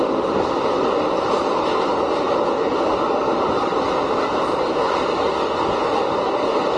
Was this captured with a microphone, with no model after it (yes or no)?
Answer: yes